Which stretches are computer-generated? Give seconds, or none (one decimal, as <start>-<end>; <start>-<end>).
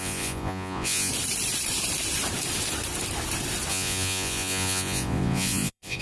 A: 0.0-1.1; 3.7-6.0